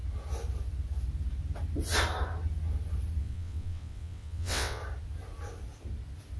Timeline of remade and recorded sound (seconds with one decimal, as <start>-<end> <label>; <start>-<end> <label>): 0.0-3.2 recorded; 3.2-4.8 remade; 4.8-6.4 recorded